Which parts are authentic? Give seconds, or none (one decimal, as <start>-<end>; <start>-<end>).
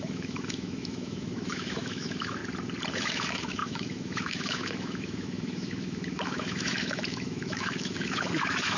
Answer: 2.4-2.9